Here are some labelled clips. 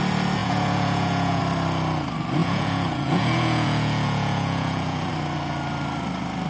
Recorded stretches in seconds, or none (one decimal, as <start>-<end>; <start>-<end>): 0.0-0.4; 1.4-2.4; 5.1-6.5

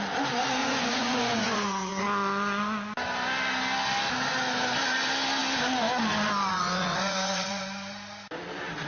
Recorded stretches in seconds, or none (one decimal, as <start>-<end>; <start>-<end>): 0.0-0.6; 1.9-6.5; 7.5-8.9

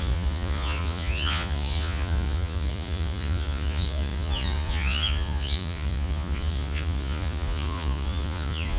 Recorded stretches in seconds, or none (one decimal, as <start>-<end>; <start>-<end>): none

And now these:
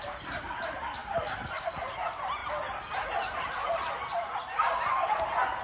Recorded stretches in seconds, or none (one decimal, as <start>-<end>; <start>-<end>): 0.0-5.6

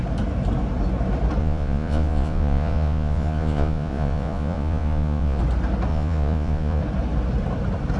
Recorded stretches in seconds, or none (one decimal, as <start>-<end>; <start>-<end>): 0.0-1.4; 5.4-5.9; 6.8-8.0

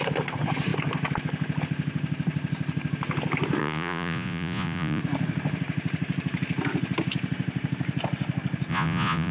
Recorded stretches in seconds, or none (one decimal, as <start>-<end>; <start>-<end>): 0.0-3.6; 5.0-8.7

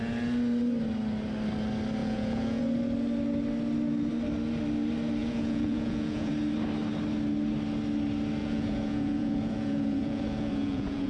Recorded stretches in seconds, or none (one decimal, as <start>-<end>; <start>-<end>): 0.0-2.0; 2.6-5.2; 6.3-8.4